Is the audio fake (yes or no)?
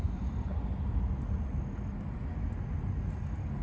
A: no